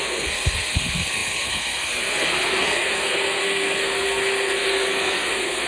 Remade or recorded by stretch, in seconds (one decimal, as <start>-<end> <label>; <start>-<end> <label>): 0.0-5.7 remade